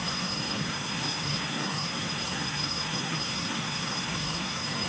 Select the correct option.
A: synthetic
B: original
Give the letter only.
A